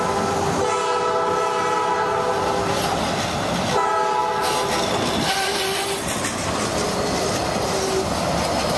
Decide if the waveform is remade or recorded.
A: recorded